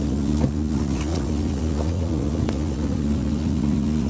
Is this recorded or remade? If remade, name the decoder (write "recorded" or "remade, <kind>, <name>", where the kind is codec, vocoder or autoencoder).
remade, vocoder, Vocos